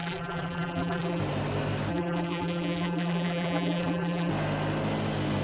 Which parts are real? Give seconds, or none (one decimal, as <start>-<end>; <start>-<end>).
1.2-1.9; 4.3-5.4